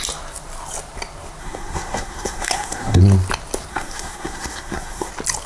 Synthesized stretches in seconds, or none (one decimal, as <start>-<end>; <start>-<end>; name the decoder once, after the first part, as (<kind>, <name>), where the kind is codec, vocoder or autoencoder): 1.4-3.0 (codec, SNAC); 3.7-5.1